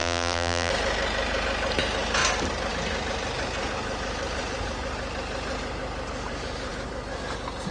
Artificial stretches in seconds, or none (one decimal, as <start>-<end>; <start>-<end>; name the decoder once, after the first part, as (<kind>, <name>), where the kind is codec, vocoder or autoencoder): 0.0-0.7 (vocoder, BigVGAN v2)